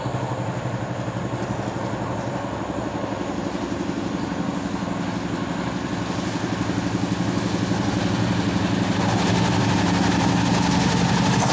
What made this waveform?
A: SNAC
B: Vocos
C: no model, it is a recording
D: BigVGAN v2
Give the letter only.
C